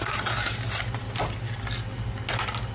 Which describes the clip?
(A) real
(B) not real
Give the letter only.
A